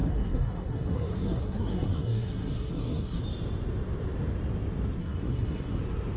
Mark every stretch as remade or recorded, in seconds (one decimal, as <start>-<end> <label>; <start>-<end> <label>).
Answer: 0.0-3.2 remade; 3.2-5.0 recorded; 5.0-5.8 remade; 5.8-6.2 recorded